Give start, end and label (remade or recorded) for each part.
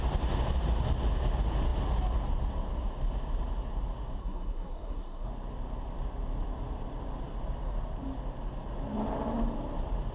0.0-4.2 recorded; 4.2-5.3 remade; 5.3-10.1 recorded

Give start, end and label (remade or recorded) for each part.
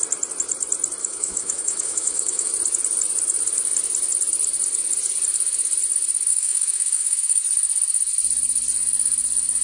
0.0-1.0 recorded; 1.0-2.5 remade; 2.5-6.3 recorded; 6.3-7.4 remade; 7.4-9.6 recorded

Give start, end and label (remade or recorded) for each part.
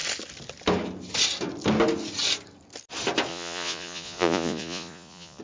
0.0-3.3 recorded; 3.3-5.4 remade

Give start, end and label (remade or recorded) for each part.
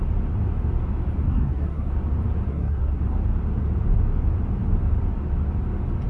0.0-1.2 recorded; 1.2-1.9 remade; 1.9-2.5 recorded; 2.5-3.0 remade; 3.0-6.1 recorded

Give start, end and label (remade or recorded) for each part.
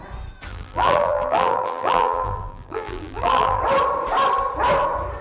0.0-0.5 recorded; 0.5-3.6 remade; 3.6-5.2 recorded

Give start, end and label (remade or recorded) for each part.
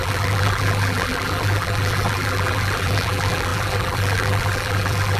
0.0-5.2 remade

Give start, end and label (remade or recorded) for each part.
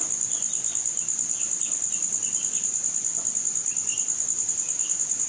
0.0-5.3 recorded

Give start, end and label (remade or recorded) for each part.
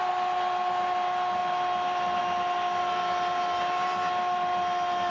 0.0-5.1 recorded